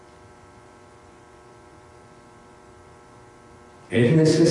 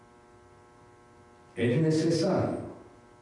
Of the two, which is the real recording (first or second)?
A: second